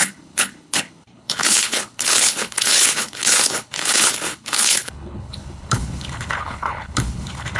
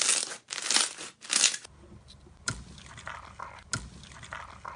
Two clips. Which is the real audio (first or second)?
second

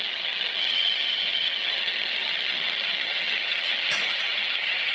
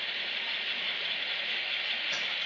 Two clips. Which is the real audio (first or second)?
second